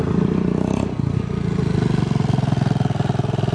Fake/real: real